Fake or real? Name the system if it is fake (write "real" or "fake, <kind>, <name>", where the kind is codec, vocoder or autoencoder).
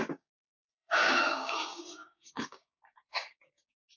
fake, codec, DAC